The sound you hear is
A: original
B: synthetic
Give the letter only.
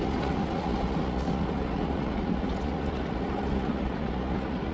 B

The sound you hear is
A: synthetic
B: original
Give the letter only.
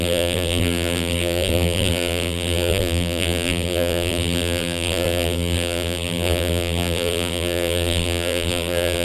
A